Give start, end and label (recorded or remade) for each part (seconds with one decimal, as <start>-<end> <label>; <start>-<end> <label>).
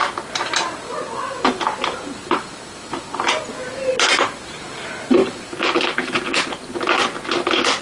0.0-7.8 recorded